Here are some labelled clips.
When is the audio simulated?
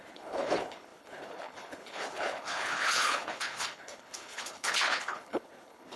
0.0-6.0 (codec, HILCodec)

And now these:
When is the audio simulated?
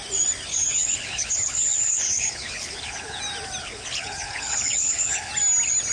0.5-3.2 (codec, HILCodec); 3.6-5.3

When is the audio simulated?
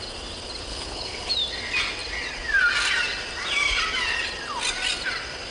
0.7-1.3 (codec, HILCodec)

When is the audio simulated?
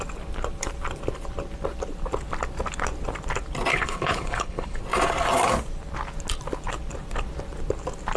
3.7-4.8 (codec, HILCodec)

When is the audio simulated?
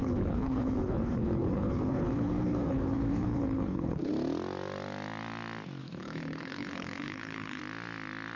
0.0-4.1 (codec, HILCodec); 5.8-7.6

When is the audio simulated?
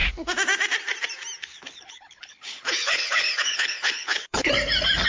1.5-4.5 (codec, HILCodec)